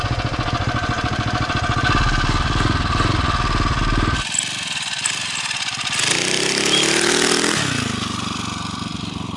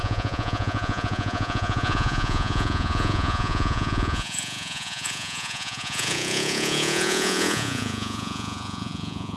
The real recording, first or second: first